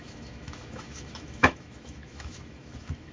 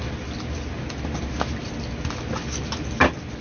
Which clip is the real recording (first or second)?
second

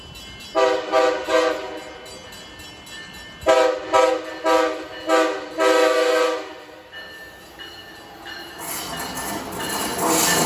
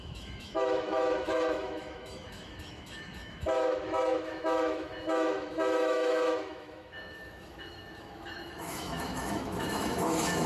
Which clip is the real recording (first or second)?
first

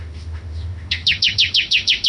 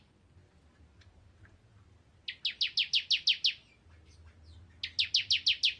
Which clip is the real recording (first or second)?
second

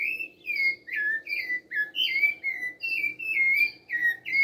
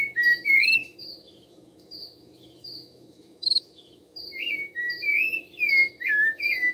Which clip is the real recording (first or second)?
first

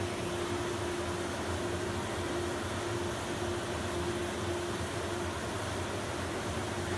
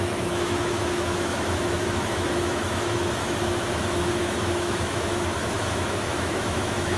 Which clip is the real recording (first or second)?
first